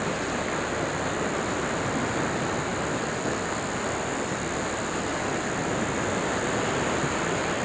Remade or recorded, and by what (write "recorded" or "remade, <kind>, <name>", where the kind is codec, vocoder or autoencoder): recorded